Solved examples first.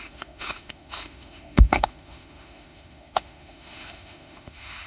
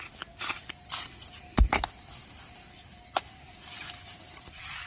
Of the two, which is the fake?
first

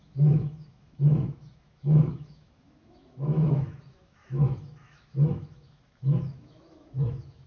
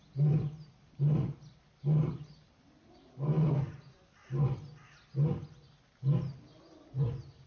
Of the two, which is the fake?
first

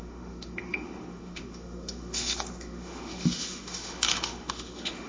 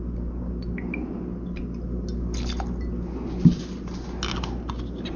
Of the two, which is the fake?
first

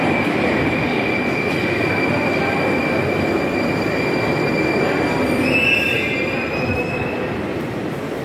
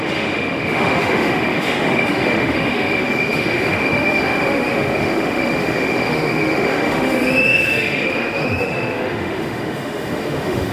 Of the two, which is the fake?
second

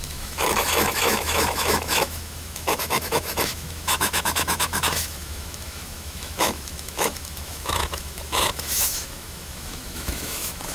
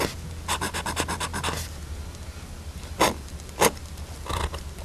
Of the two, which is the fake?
first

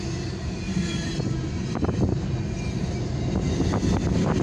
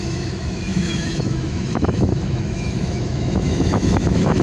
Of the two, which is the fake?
second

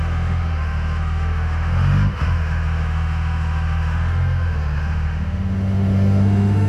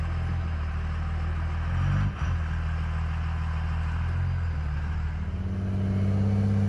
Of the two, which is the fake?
first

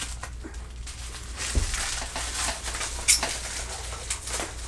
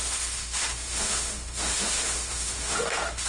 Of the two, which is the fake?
second